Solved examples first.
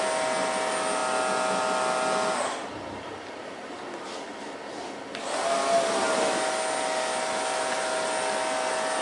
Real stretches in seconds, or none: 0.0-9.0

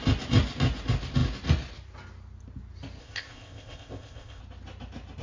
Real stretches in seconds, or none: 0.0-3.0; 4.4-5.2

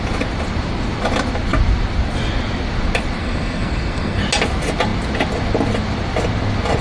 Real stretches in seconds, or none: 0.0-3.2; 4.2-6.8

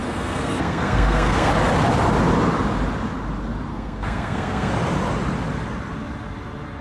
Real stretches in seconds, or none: 1.5-3.7; 4.7-6.8

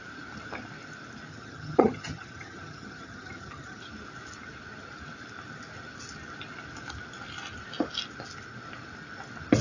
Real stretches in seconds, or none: 0.0-1.3; 3.8-9.6

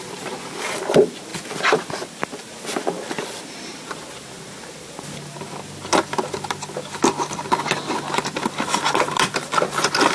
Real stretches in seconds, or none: 0.0-10.1

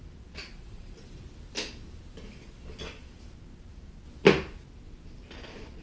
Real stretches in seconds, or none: 0.0-0.4; 1.1-5.8

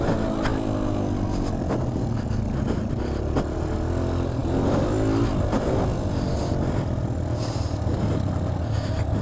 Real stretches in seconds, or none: 0.0-4.4; 8.1-9.2